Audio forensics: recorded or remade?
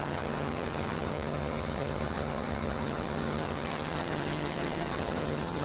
remade